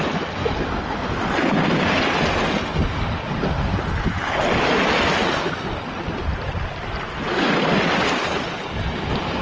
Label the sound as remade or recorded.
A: recorded